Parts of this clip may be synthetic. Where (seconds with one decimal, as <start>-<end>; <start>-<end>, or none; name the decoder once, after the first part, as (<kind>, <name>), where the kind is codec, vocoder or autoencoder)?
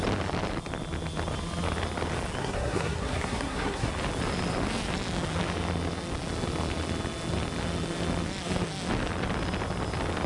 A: 2.4-3.9 (codec, SNAC)